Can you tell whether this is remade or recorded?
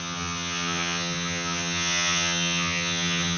remade